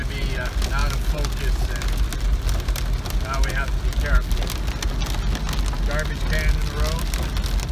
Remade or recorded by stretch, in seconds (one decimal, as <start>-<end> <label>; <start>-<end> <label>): 0.0-7.7 recorded

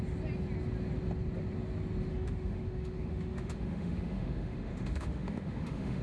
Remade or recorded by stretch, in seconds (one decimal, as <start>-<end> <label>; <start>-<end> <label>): 0.0-2.1 recorded; 2.1-6.0 remade

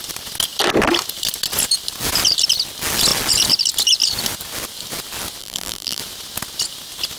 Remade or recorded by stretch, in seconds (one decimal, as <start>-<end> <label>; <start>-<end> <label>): 0.0-5.4 recorded; 5.4-6.0 remade; 6.0-7.2 recorded

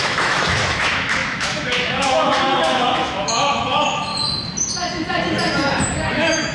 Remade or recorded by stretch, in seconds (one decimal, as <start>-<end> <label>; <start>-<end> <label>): 0.0-4.1 remade; 4.1-6.1 recorded; 6.1-6.5 remade

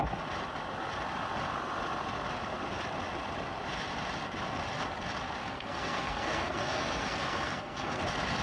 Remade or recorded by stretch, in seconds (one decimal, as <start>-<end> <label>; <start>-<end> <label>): 0.0-5.4 recorded; 5.4-8.0 remade; 8.0-8.4 recorded

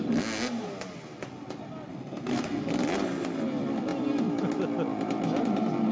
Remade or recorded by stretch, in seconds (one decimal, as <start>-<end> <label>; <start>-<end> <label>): 0.0-1.9 recorded; 1.9-2.6 remade; 2.6-5.9 recorded

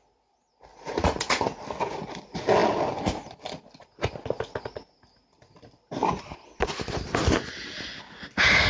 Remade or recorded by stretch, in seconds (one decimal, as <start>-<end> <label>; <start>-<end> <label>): 0.0-0.7 recorded; 0.7-1.6 remade; 1.6-8.7 recorded

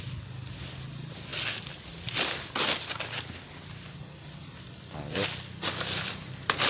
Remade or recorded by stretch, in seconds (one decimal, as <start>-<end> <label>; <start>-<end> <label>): 0.0-6.7 recorded